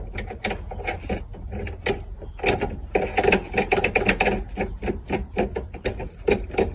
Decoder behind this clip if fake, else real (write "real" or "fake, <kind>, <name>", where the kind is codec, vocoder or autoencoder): real